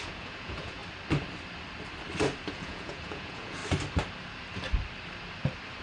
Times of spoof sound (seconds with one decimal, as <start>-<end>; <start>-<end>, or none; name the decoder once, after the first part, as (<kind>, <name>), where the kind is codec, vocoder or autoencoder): 0.0-0.8 (vocoder, Vocos); 2.5-3.6